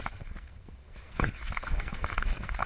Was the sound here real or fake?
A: fake